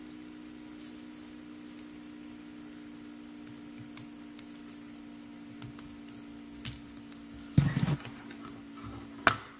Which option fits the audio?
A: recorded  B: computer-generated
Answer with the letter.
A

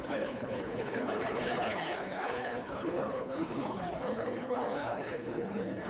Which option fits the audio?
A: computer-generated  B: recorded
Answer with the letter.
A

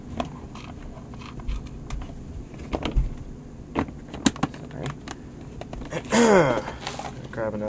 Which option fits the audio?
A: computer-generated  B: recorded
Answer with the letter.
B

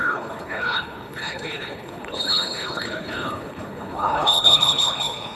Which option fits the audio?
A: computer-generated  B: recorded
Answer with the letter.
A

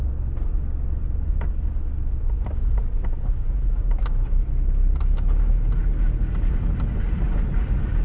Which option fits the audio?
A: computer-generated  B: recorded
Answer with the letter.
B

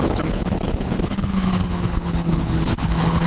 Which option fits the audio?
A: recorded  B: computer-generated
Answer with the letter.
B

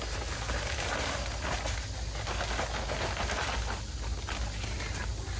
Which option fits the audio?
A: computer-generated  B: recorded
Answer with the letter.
B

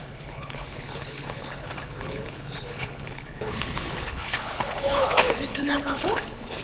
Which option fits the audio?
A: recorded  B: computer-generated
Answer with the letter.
B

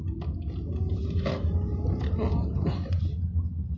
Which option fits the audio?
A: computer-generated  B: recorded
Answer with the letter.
B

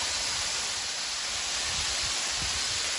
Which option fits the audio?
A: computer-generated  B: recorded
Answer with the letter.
B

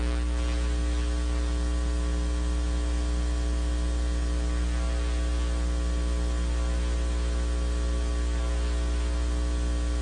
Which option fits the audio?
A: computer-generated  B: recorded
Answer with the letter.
B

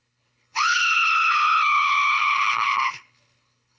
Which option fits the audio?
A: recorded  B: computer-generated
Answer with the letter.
B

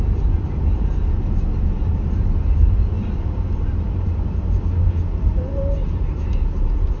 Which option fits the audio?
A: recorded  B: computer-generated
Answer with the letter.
A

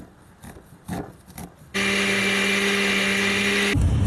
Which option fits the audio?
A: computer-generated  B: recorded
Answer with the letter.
B